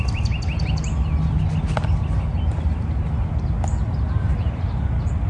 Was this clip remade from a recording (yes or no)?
no